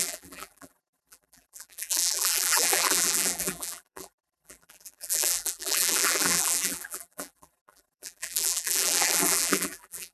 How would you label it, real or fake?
fake